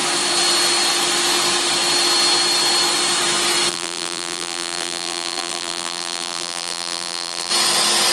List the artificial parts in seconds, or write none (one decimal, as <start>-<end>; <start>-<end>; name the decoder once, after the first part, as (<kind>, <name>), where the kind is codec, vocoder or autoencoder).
3.7-7.5 (vocoder, BigVGAN v2)